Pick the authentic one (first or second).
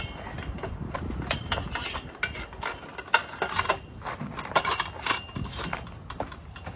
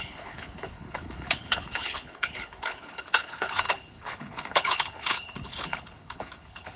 first